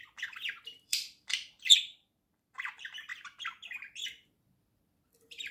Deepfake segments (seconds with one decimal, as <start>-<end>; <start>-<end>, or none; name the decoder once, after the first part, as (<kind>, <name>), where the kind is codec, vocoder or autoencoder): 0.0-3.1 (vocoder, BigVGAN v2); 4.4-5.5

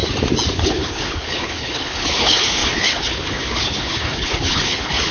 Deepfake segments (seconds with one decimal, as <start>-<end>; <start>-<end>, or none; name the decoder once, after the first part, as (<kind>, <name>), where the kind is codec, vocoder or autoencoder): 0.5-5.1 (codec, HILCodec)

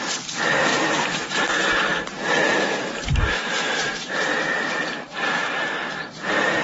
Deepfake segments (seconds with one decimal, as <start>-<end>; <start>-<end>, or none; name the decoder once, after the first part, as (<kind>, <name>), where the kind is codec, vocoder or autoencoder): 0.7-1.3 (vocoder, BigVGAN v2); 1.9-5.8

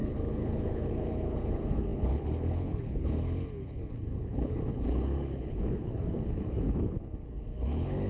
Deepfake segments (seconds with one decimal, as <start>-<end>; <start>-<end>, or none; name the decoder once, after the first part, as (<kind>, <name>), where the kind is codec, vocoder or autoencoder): 0.0-8.1 (codec, HILCodec)

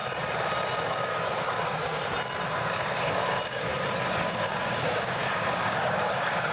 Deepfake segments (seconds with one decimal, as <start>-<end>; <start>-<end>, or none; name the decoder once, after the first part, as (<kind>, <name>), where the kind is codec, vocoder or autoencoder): 0.8-2.0 (codec, DAC); 2.6-3.7; 4.3-6.5